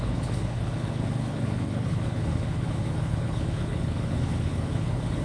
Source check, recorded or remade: remade